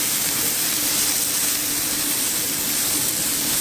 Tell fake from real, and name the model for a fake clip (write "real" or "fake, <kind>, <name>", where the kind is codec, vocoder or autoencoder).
fake, vocoder, BigVGAN v2